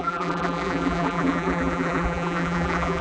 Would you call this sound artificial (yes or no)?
yes